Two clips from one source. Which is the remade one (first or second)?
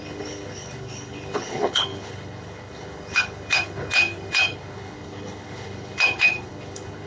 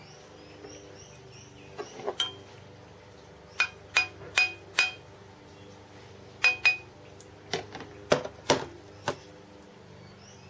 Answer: first